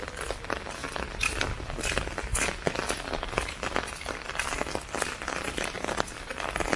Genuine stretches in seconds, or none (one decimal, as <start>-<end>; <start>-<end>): 0.0-6.8

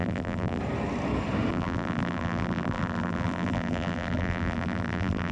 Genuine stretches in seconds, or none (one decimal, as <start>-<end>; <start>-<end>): 0.6-1.5

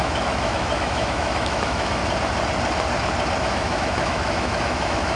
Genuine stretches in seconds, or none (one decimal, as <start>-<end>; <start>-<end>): 2.0-3.4

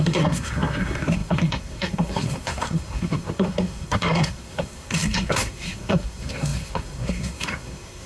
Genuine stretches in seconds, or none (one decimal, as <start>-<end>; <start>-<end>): none

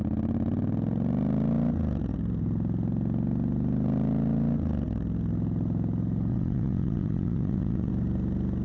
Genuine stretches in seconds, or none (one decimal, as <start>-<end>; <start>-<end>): 0.0-6.3; 7.9-8.6

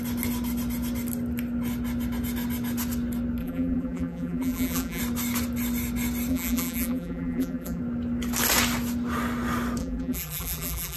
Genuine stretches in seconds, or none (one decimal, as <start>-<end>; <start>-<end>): 0.0-3.4; 5.0-6.3; 7.8-9.8